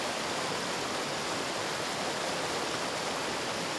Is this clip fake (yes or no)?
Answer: no